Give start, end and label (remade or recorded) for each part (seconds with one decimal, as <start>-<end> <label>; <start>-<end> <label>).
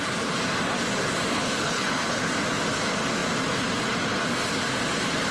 0.0-1.3 recorded; 1.3-2.3 remade; 2.3-5.3 recorded